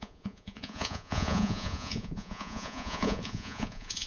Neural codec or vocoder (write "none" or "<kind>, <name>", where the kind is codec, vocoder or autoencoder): vocoder, Vocos